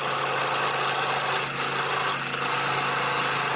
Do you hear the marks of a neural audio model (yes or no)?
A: no